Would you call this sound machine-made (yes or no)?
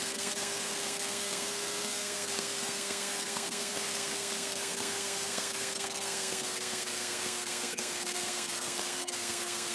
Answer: yes